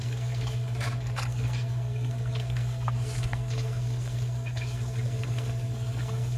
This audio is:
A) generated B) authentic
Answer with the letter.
A